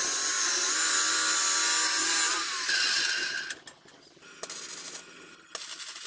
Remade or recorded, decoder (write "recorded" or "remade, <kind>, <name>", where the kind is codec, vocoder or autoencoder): recorded